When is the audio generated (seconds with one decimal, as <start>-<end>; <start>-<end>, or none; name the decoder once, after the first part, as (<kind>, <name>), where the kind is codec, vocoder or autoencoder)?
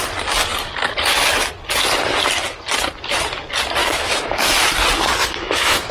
3.8-4.5 (autoencoder, DAC-VAE); 5.2-5.9